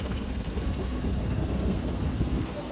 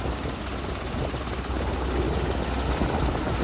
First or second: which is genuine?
second